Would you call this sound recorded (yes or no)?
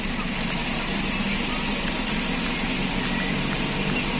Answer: yes